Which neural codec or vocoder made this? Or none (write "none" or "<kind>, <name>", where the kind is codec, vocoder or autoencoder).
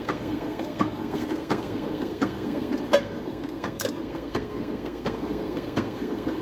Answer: codec, SNAC